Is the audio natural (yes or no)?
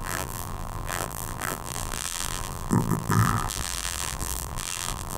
no